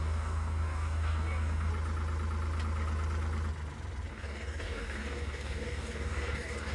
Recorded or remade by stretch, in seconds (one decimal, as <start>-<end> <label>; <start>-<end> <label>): 0.0-1.7 remade; 1.7-4.1 recorded; 4.1-6.7 remade